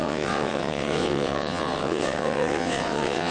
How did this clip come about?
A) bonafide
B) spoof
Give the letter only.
B